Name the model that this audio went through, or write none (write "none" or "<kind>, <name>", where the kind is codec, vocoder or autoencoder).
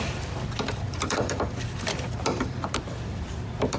vocoder, BigVGAN v2